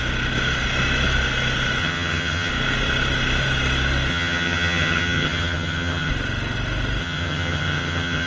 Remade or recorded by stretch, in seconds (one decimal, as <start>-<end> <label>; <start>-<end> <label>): 0.0-1.8 recorded; 1.8-2.5 remade; 2.5-4.1 recorded; 4.1-6.1 remade; 6.1-7.0 recorded; 7.0-8.3 remade